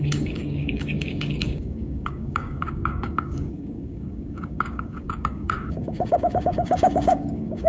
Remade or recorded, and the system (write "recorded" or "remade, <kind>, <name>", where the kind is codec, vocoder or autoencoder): remade, codec, DAC